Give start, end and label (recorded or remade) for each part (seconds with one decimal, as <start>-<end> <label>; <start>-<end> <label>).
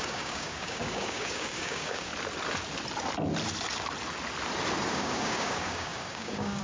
0.0-2.1 remade; 2.1-4.9 recorded; 4.9-6.6 remade